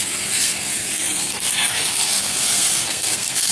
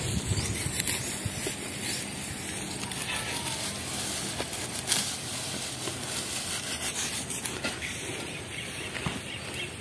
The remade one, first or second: first